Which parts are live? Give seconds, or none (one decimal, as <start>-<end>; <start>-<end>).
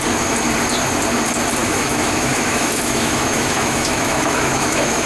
0.0-1.6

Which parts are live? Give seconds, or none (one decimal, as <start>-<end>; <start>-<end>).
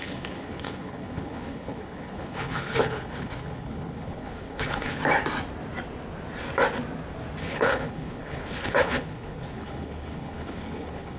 5.0-7.4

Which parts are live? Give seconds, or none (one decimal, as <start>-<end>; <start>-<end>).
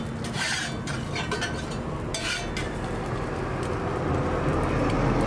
0.0-5.3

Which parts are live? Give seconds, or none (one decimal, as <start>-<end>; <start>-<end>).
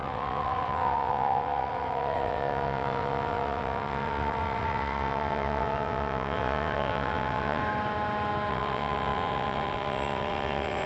7.6-8.5